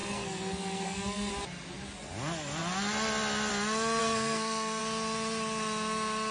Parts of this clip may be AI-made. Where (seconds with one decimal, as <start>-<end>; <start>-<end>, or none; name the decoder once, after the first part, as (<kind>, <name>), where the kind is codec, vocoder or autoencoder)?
0.0-1.3 (codec, SNAC); 4.0-4.8